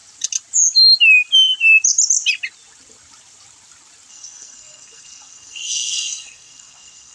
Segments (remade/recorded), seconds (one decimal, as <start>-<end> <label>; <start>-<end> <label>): 0.0-4.1 recorded; 4.1-7.1 remade